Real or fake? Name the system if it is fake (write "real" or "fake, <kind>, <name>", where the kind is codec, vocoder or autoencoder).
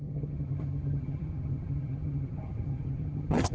fake, vocoder, HiFi-GAN